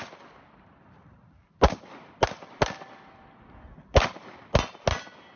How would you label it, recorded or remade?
recorded